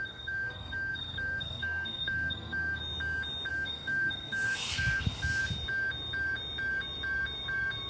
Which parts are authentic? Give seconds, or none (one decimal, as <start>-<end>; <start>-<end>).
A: 2.8-3.5; 5.4-7.9